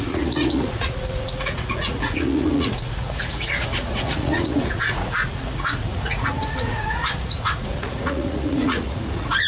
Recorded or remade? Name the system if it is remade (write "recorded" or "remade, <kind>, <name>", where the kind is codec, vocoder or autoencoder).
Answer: remade, vocoder, Vocos